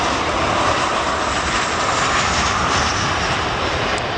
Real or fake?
fake